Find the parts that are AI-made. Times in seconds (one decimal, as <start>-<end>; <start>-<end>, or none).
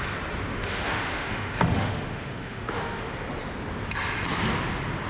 0.5-3.1